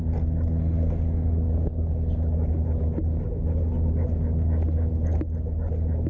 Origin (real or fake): real